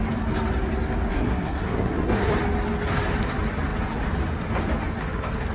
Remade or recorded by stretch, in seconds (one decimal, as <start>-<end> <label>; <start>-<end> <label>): 0.0-1.1 recorded; 1.1-2.3 remade; 2.3-5.5 recorded